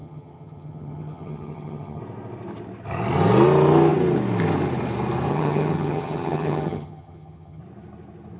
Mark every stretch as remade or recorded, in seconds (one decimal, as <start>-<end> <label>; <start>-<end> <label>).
0.0-2.0 remade; 2.0-5.3 recorded; 5.3-7.6 remade; 7.6-8.4 recorded